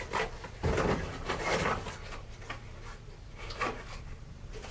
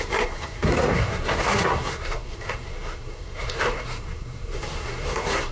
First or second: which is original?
first